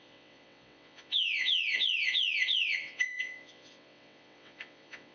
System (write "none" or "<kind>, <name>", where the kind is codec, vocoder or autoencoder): vocoder, WaveNeXt